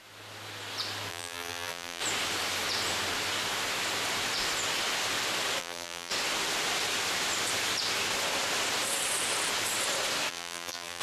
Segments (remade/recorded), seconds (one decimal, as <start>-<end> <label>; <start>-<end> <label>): 0.0-1.1 recorded; 1.1-2.0 remade; 2.0-5.6 recorded; 5.6-6.1 remade; 6.1-10.3 recorded; 10.3-11.0 remade